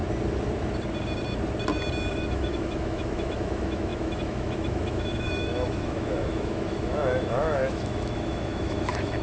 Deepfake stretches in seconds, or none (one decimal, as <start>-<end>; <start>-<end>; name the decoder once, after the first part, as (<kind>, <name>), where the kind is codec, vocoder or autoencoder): 2.1-9.2 (autoencoder, DAC-VAE)

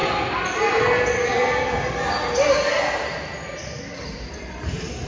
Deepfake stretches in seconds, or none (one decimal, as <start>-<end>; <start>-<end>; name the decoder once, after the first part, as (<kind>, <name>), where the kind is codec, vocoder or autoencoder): none

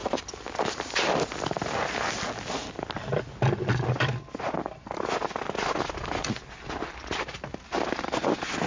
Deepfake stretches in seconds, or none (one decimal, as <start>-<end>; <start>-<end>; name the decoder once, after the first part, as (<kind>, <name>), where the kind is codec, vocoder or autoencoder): none

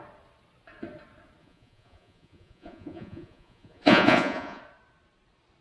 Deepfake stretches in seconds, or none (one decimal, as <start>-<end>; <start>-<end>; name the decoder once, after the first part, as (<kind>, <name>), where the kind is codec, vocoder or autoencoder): 1.4-4.6 (vocoder, Vocos)